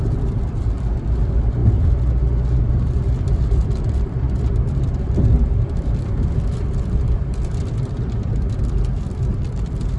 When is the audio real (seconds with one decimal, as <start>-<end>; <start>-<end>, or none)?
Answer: 1.6-2.6